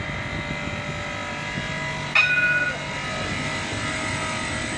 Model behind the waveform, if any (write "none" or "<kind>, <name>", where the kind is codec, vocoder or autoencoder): none